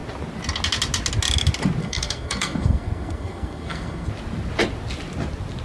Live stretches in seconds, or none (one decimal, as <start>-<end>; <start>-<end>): 0.0-1.8; 4.1-5.6